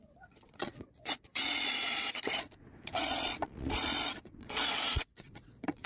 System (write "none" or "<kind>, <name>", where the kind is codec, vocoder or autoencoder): vocoder, Vocos